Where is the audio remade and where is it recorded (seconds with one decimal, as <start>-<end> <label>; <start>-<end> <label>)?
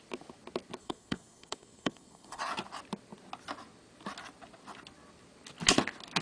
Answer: 0.0-0.8 recorded; 0.8-2.4 remade; 2.4-6.2 recorded